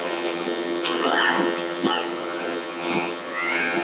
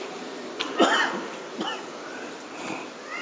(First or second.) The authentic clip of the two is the second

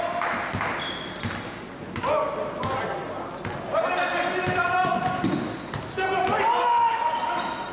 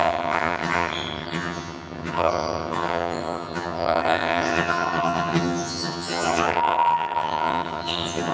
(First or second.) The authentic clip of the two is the first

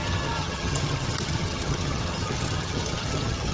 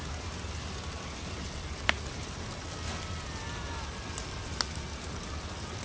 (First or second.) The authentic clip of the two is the second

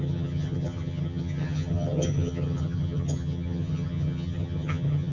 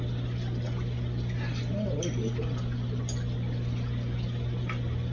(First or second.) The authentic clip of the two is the second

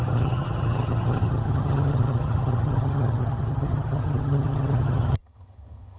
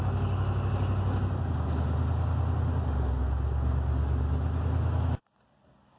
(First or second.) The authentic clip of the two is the second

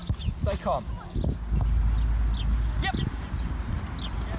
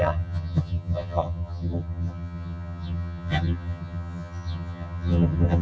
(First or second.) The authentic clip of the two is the first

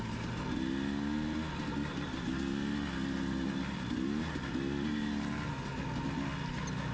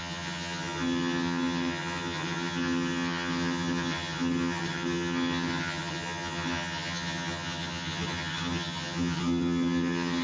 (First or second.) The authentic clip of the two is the first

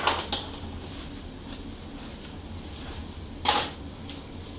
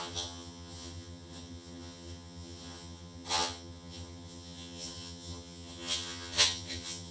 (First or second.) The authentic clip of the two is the first